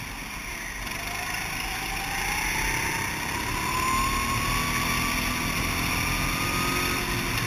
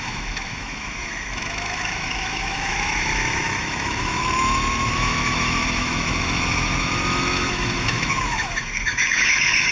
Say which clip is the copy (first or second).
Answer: second